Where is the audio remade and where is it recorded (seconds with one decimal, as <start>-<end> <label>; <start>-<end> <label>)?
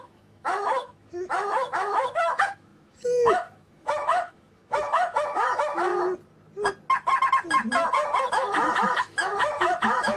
0.0-5.9 remade; 5.9-8.3 recorded; 8.3-10.2 remade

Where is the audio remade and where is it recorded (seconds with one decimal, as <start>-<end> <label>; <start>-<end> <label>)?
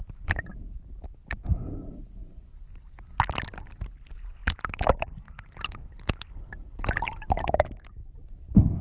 0.0-8.8 recorded